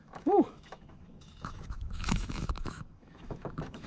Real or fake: fake